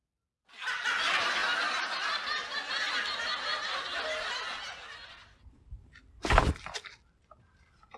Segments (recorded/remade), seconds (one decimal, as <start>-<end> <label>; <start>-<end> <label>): 0.0-8.0 recorded